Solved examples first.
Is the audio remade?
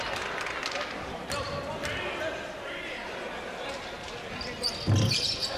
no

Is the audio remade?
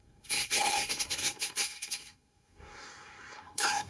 yes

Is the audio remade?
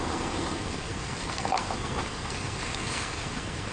yes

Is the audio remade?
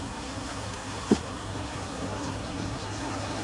yes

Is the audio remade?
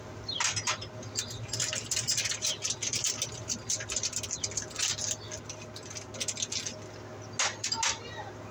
no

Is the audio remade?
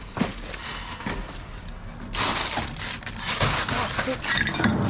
no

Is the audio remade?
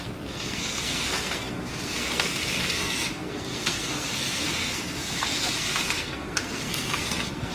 yes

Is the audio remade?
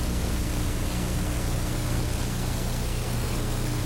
yes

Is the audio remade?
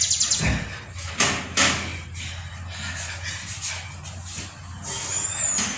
no